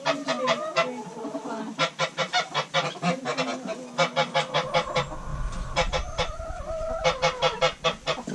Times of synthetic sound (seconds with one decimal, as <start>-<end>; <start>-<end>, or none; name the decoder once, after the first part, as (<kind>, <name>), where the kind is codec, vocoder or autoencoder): 5.3-5.9 (vocoder, BigVGAN v2)